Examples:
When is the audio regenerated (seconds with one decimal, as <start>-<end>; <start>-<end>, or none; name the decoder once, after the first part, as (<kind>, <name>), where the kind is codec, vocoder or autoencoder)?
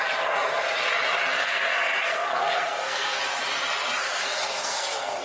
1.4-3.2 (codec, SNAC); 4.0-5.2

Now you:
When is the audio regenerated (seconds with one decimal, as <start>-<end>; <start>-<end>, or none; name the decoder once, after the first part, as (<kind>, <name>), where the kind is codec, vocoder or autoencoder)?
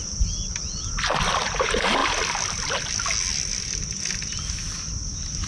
none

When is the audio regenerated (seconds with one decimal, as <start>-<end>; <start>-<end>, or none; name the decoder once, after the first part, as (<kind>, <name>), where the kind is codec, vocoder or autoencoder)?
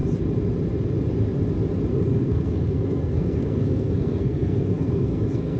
1.9-5.6 (codec, SNAC)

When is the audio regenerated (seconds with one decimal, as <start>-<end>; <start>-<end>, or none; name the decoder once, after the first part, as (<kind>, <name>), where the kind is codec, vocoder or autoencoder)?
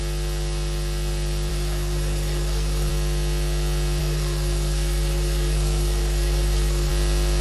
1.5-2.9 (codec, SNAC); 4.0-6.9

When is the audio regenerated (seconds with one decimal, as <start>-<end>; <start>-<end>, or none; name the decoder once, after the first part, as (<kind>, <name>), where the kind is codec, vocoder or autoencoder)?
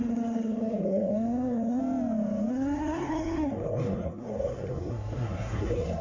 0.0-1.8 (codec, SNAC); 2.5-6.0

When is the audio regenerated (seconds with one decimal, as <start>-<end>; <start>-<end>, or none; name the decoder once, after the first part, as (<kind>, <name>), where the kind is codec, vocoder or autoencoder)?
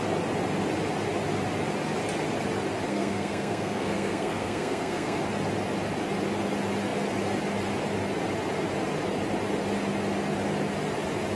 2.9-5.2 (codec, SNAC)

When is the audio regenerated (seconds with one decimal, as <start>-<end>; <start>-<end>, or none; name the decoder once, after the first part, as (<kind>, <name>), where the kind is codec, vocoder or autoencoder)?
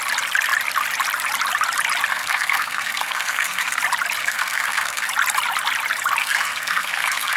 2.1-3.8 (codec, SNAC); 4.2-5.1; 6.2-7.4